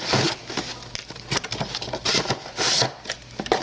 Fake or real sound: real